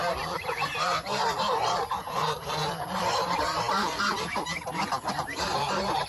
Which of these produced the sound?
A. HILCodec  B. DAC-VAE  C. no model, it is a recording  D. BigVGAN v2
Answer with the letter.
D